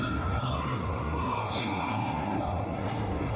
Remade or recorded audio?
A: remade